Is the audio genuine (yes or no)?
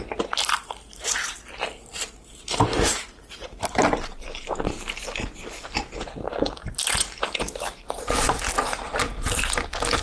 no